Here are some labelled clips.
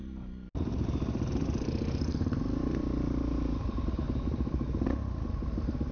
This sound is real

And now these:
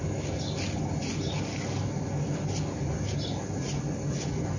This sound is real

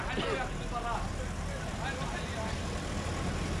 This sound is real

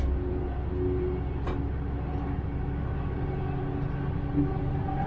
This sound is real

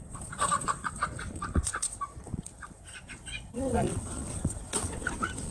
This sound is fake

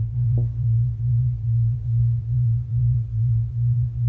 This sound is fake